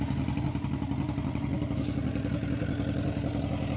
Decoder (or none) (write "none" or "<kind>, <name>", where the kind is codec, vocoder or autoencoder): none